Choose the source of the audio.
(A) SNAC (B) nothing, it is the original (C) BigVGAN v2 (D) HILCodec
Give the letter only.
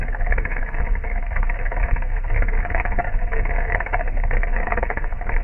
A